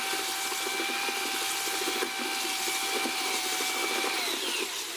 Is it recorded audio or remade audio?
recorded